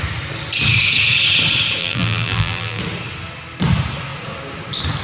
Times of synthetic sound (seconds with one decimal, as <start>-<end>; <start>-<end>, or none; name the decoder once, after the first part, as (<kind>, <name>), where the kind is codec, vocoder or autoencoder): 1.8-2.8 (vocoder, BigVGAN v2)